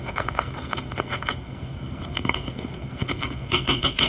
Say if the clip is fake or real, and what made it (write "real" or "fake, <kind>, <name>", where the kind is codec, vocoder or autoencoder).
fake, codec, SNAC